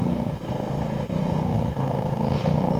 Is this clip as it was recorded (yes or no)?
no